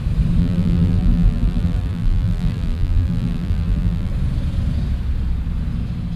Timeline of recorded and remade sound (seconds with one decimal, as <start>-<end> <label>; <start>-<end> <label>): 0.0-0.4 recorded; 0.4-4.1 remade; 4.1-6.2 recorded